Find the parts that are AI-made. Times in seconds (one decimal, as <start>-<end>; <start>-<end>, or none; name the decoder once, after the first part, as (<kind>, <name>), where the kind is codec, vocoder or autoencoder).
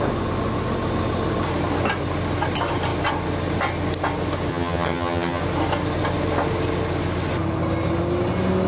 4.5-5.4 (vocoder, HiFi-GAN)